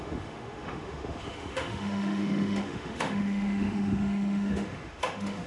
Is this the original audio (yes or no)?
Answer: no